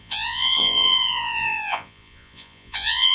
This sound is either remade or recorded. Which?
remade